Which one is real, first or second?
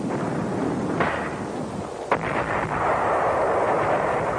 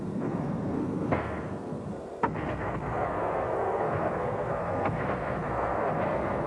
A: first